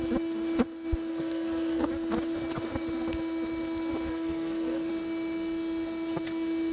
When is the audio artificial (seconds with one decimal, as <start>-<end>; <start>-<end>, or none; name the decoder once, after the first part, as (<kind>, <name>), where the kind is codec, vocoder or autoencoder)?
1.1-1.9 (codec, SNAC); 4.1-4.9

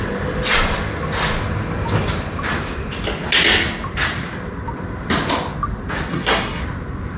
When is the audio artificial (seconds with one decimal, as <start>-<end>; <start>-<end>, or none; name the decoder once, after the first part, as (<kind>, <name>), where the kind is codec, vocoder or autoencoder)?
6.1-6.6 (codec, SNAC)

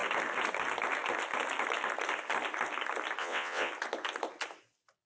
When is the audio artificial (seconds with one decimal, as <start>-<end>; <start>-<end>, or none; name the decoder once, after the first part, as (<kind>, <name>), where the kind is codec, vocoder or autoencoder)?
3.2-3.7 (vocoder, WaveNeXt)

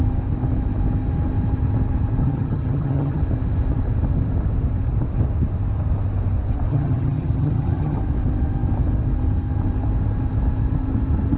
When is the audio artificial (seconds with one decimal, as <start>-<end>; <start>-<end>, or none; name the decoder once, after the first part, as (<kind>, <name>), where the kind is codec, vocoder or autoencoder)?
2.2-3.2 (vocoder, HiFi-GAN); 6.7-8.0

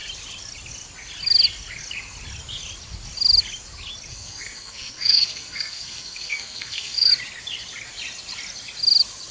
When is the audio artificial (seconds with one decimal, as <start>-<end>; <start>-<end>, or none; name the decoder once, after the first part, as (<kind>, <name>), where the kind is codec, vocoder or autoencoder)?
4.1-7.1 (codec, SNAC)

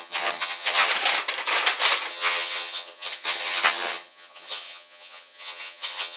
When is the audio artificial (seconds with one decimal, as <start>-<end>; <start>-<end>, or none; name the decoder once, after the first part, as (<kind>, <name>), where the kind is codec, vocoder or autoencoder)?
0.0-0.9 (vocoder, HiFi-GAN); 2.1-6.2

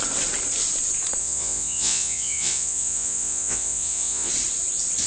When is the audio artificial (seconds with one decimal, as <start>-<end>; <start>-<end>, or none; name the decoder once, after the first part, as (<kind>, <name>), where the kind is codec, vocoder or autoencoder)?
1.2-4.3 (vocoder, Vocos)

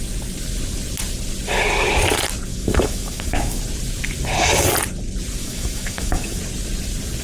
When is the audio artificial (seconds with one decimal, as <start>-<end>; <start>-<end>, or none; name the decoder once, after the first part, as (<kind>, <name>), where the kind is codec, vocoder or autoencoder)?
2.5-3.6 (autoencoder, DAC-VAE); 5.4-6.4